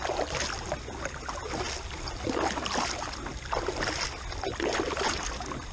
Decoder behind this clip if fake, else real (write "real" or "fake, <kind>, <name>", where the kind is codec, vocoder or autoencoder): real